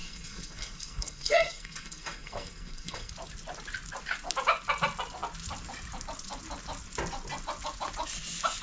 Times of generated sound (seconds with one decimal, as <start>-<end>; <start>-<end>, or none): 0.0-3.1